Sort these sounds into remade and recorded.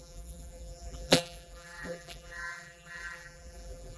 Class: remade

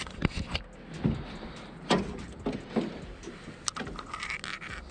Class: recorded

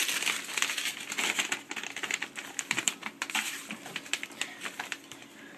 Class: recorded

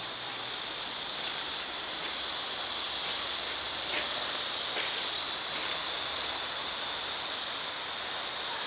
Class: remade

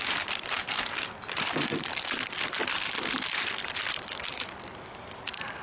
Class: remade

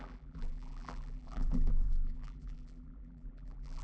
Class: remade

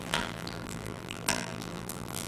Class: remade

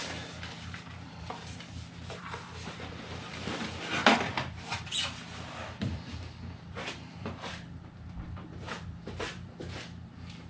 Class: remade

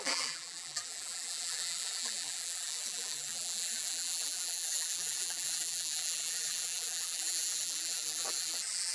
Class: remade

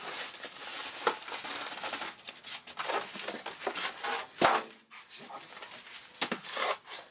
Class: recorded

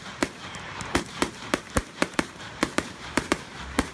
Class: remade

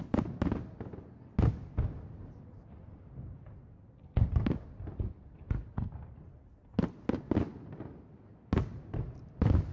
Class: recorded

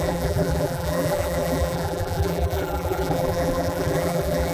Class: remade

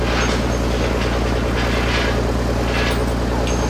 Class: recorded